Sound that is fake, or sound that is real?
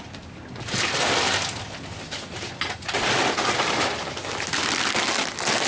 real